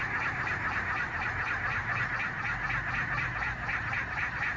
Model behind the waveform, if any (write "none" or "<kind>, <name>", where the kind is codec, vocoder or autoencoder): none